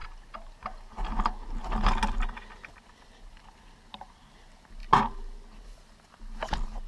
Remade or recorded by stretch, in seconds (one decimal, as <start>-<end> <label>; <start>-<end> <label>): 0.0-6.9 recorded